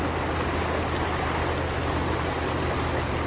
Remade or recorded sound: recorded